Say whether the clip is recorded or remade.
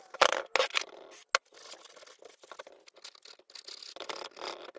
recorded